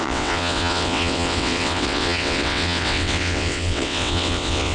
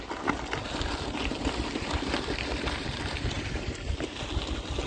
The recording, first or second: second